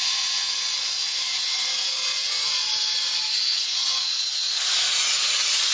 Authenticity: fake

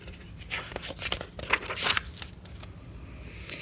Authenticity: real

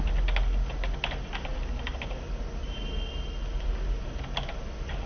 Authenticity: real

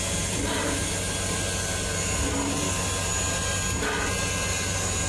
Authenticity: real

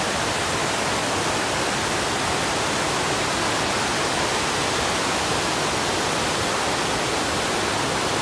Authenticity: real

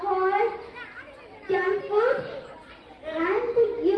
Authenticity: real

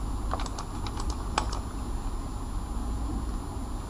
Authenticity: real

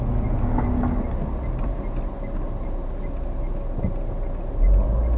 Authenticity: real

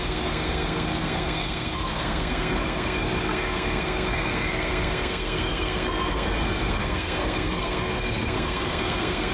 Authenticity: fake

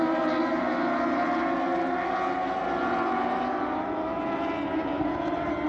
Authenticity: real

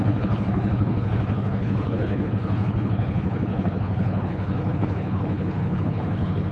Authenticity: fake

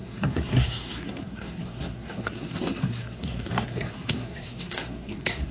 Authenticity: fake